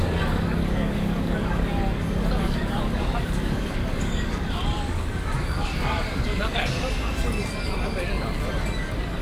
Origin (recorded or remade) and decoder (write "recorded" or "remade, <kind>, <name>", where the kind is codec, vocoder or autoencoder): remade, codec, DAC